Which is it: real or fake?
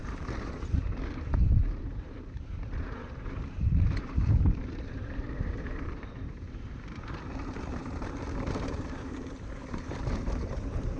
fake